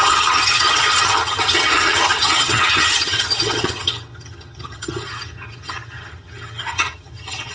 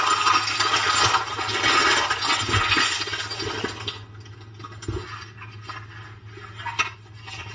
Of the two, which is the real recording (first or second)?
second